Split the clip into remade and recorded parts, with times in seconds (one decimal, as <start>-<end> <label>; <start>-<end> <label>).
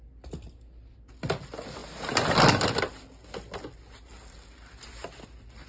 0.0-5.7 recorded